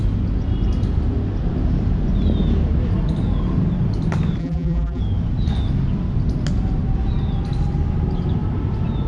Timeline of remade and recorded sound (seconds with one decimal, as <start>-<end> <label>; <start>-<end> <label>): 0.0-4.4 recorded; 4.4-5.0 remade; 5.0-9.1 recorded